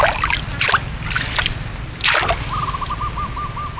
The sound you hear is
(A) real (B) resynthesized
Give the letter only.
A